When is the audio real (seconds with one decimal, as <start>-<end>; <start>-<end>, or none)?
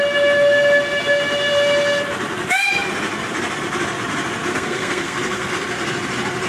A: 0.0-4.5; 5.5-6.5